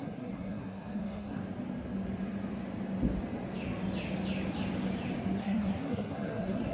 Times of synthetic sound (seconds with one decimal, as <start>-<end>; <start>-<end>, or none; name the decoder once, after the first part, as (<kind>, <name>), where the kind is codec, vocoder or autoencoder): 0.0-1.4 (codec, SNAC); 5.4-6.7